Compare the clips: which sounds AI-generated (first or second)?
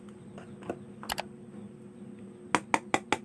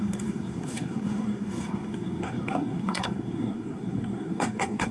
second